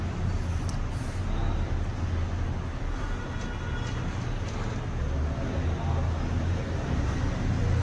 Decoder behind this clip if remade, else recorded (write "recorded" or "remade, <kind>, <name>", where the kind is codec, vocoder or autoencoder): recorded